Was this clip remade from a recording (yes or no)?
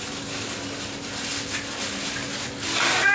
no